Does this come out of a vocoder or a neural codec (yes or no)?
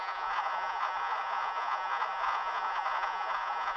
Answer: yes